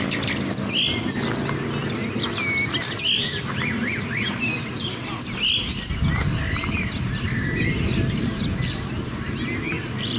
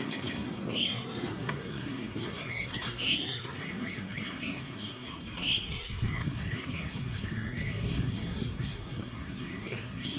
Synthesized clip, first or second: second